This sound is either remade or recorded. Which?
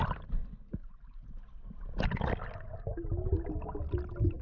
recorded